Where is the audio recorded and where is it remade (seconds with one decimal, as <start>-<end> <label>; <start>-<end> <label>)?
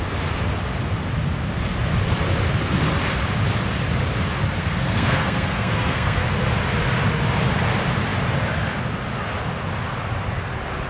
0.0-4.6 recorded; 4.6-6.2 remade; 6.2-10.9 recorded